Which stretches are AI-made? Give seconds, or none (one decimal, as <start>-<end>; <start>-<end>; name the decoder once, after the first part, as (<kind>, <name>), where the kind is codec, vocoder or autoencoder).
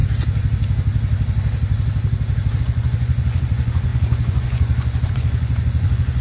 2.6-6.2 (vocoder, Vocos)